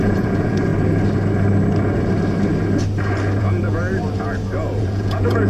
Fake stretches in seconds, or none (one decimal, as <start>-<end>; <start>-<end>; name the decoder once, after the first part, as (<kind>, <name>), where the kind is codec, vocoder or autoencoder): 0.0-0.7 (vocoder, Vocos); 3.4-3.8; 4.8-5.5